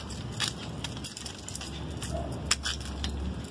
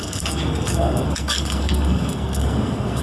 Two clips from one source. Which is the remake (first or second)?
second